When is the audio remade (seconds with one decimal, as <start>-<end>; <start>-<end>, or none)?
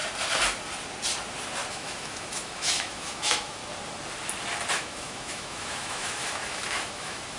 1.7-3.6; 4.7-7.4